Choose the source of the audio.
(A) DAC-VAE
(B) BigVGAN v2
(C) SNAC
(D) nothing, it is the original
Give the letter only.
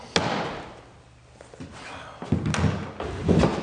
D